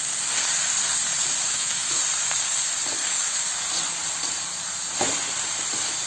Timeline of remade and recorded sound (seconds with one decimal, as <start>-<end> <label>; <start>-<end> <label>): 0.0-1.4 recorded; 1.4-2.0 remade; 2.0-3.0 recorded; 3.0-3.5 remade; 3.5-6.1 recorded